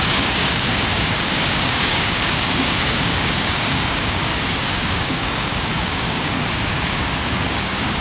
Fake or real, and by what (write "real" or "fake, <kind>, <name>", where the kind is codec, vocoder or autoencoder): fake, codec, DAC